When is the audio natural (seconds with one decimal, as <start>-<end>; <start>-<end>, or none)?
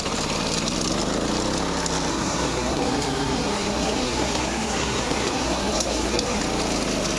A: 0.0-2.1; 6.4-7.2